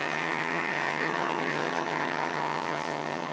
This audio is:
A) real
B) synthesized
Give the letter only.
B